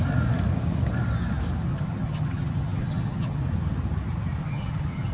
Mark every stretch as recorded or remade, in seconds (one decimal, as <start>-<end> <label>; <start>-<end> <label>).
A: 0.0-1.7 recorded; 1.7-3.4 remade; 3.4-4.4 recorded; 4.4-5.1 remade